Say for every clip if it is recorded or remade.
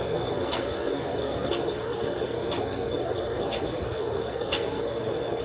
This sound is remade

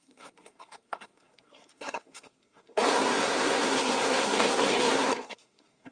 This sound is remade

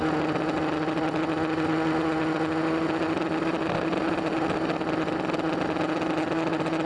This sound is recorded